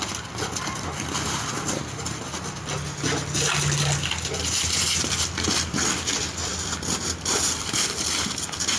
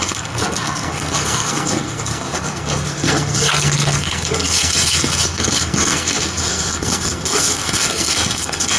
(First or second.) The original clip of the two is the first